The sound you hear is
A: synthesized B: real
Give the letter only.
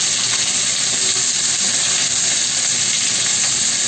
B